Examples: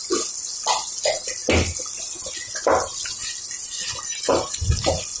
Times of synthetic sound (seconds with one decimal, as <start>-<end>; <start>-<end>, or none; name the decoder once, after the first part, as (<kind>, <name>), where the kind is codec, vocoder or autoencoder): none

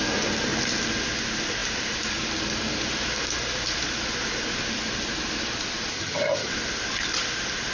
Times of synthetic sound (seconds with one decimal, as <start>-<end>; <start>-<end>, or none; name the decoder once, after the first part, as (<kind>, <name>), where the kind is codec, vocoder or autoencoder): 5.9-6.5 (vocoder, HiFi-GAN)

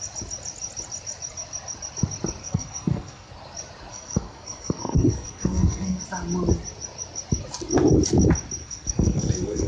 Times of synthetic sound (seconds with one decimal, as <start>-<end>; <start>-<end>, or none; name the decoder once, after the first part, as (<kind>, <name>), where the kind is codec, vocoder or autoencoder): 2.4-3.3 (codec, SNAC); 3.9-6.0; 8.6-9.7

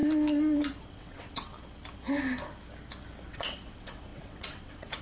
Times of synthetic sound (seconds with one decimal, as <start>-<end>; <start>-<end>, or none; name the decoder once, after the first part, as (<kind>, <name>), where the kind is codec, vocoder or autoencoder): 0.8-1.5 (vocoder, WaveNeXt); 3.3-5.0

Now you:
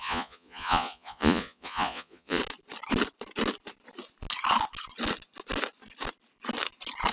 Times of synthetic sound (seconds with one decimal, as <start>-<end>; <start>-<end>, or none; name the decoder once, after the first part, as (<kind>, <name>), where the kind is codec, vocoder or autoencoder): 0.0-2.4 (vocoder, Vocos)